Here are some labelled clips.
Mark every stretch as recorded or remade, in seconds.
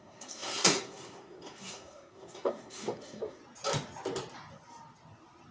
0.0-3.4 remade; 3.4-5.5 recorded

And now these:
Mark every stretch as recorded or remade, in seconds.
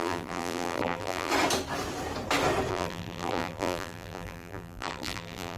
0.0-1.3 remade; 1.3-2.7 recorded; 2.7-5.6 remade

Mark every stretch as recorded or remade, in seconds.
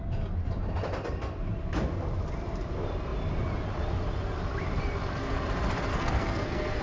0.0-5.9 recorded; 5.9-6.8 remade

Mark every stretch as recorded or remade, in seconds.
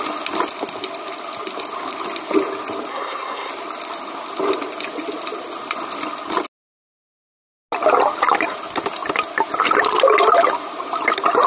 0.0-2.9 recorded; 2.9-3.5 remade; 3.5-11.5 recorded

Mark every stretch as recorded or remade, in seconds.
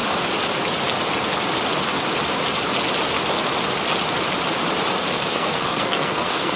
0.0-5.1 recorded; 5.1-6.6 remade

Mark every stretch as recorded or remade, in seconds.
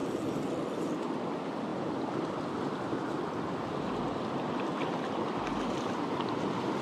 0.0-6.8 recorded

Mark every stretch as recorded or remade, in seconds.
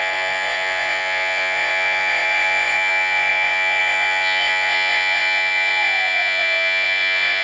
0.0-7.4 remade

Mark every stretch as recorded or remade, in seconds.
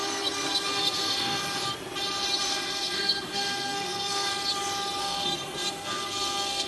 0.0-1.4 remade; 1.4-2.4 recorded; 2.4-4.3 remade; 4.3-5.0 recorded; 5.0-6.7 remade